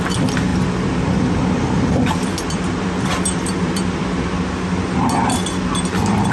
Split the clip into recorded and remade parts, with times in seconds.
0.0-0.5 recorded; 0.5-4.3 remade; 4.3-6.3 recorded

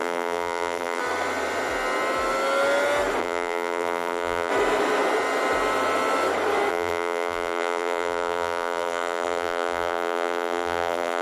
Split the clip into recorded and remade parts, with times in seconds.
0.0-1.0 remade; 1.0-3.2 recorded; 3.2-4.5 remade; 4.5-6.7 recorded; 6.7-11.2 remade